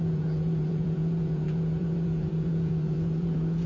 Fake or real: fake